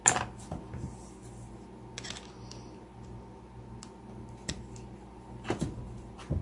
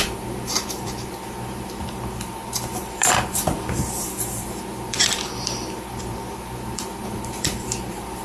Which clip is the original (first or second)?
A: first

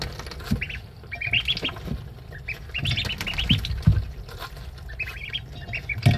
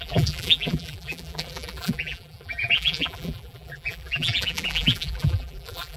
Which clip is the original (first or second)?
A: first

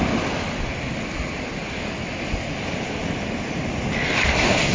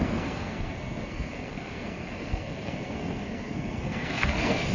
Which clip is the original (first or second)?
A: first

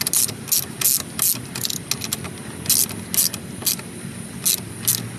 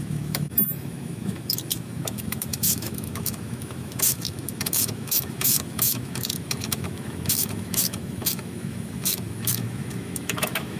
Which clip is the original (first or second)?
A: first